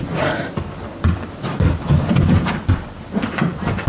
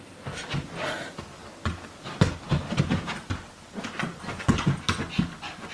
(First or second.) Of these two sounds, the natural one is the second